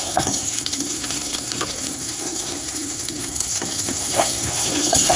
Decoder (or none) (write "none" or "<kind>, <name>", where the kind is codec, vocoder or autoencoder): codec, SNAC